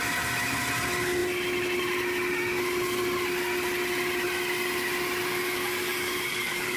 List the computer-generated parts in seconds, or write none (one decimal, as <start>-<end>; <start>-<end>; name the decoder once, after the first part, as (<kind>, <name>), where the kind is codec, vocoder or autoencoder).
5.3-6.8 (codec, DAC)